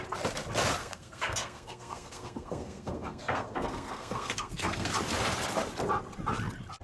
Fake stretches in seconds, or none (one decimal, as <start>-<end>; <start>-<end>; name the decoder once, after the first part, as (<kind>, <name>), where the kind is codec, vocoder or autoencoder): 0.8-4.9 (codec, SNAC)